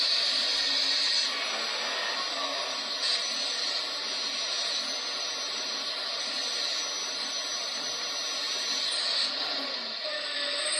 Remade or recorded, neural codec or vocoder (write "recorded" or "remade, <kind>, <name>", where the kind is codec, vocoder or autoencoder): recorded